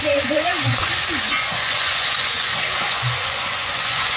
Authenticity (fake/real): fake